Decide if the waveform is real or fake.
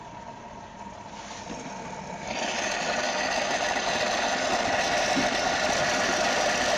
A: real